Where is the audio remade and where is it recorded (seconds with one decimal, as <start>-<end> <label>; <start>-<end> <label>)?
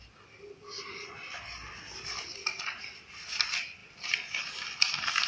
0.0-5.3 recorded